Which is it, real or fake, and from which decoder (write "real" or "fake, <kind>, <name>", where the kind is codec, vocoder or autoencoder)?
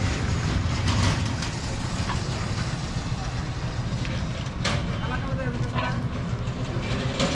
real